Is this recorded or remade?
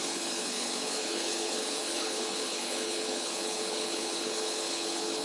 remade